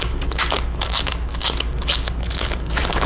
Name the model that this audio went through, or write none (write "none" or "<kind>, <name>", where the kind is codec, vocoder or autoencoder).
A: codec, DAC